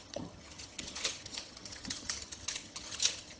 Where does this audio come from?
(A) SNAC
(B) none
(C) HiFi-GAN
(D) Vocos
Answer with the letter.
C